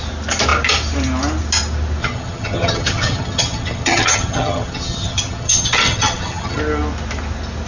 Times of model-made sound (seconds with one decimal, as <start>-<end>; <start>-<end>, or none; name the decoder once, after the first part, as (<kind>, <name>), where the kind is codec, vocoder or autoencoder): 2.0-6.6 (vocoder, HiFi-GAN)